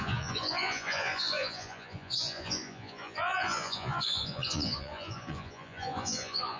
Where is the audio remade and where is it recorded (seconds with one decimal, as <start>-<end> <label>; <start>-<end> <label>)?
0.0-6.6 remade